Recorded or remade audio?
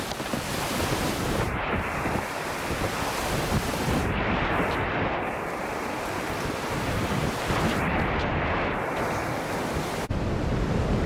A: recorded